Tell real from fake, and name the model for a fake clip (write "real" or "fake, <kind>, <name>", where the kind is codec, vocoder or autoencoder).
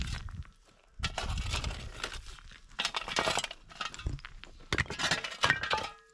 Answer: real